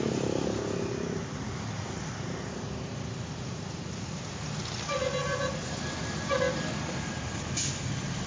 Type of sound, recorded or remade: recorded